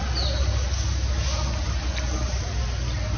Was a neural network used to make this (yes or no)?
no